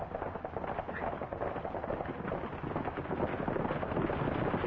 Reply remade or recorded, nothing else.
recorded